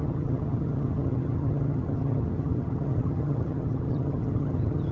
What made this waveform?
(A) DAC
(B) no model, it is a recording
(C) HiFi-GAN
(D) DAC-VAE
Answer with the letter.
C